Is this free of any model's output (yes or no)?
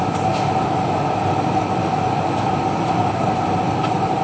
yes